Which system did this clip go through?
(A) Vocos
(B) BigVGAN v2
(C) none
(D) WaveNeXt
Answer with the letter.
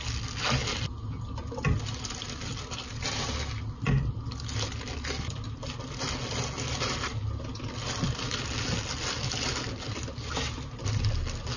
C